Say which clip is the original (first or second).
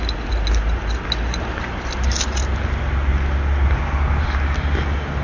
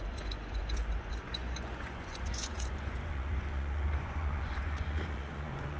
first